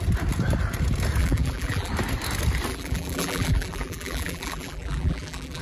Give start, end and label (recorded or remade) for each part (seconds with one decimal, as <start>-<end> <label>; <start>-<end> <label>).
0.0-1.2 recorded; 1.2-1.9 remade; 1.9-2.7 recorded; 2.7-5.6 remade